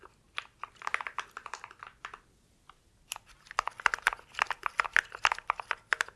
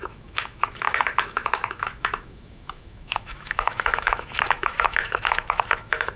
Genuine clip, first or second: first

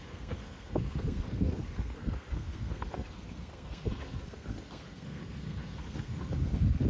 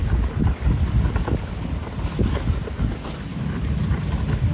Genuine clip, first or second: second